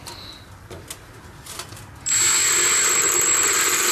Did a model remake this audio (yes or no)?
no